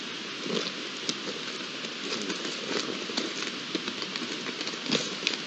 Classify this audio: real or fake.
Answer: real